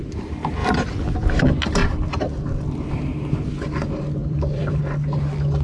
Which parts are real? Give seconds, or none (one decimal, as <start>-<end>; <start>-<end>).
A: 0.0-0.6; 1.4-1.8; 2.9-4.2; 4.8-5.6